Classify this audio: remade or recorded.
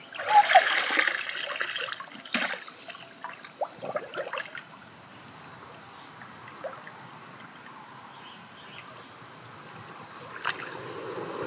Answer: recorded